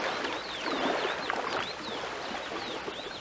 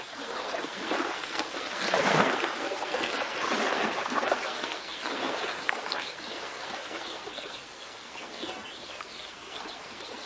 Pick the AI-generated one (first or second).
second